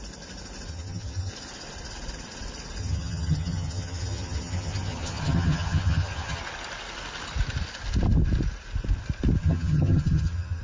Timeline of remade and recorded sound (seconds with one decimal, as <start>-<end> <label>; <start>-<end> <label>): 0.0-0.7 recorded; 0.7-1.3 remade; 1.3-2.8 recorded; 2.8-6.4 remade; 6.4-9.4 recorded; 9.4-10.6 remade